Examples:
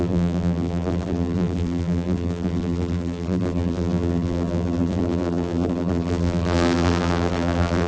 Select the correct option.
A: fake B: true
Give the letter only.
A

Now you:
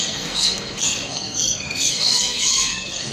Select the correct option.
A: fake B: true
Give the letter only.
A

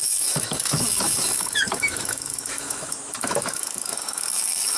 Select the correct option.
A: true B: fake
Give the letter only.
B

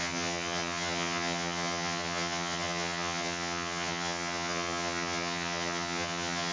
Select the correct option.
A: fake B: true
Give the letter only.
A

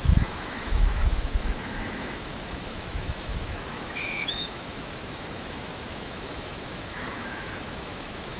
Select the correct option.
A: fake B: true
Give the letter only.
A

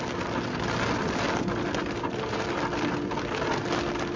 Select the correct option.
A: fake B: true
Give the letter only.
B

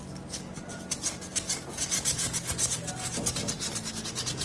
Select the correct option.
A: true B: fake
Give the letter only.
A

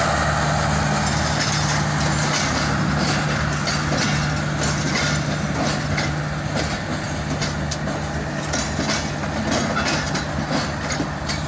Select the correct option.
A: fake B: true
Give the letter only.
B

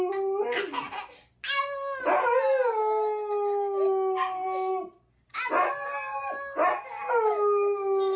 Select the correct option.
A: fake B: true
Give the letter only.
B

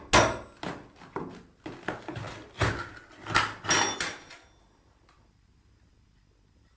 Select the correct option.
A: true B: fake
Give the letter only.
A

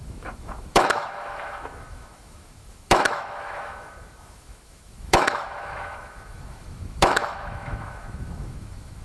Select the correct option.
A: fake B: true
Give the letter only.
A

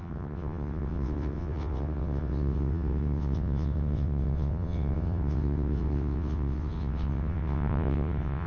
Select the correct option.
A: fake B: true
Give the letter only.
A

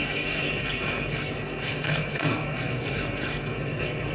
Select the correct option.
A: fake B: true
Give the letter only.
A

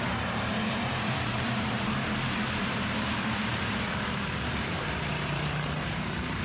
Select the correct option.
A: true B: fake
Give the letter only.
B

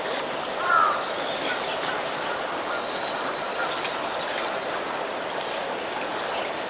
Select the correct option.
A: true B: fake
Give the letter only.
A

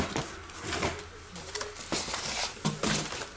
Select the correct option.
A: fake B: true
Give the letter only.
B